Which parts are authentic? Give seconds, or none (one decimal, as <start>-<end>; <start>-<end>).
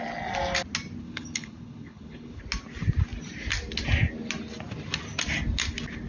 0.0-1.0; 2.4-6.1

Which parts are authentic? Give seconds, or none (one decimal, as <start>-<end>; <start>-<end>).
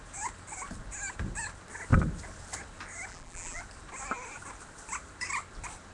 0.0-3.1; 3.6-5.9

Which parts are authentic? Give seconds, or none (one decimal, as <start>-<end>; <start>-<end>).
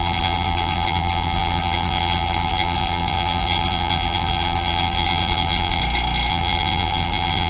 5.8-6.3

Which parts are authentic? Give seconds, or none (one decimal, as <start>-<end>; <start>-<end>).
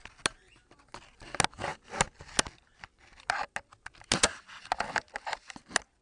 0.0-6.0